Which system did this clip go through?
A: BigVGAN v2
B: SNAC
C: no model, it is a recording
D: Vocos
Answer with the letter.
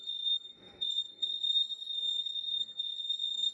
B